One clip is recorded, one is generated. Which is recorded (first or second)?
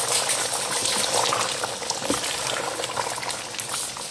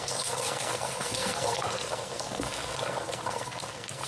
first